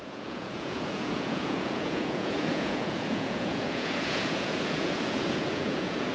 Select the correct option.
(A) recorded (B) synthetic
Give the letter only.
B